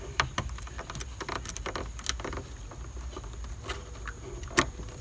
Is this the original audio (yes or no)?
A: yes